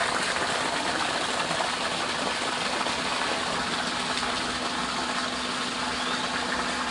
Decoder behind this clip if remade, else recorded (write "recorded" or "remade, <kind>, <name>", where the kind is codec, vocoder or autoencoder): recorded